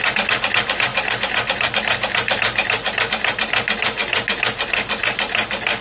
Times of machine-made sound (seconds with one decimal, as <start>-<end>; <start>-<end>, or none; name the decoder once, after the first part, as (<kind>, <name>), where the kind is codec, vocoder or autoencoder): 0.9-3.1 (vocoder, BigVGAN v2)